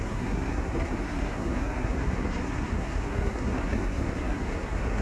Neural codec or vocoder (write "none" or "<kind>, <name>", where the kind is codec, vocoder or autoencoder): codec, SNAC